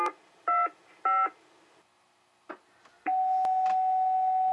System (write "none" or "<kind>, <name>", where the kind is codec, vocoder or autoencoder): none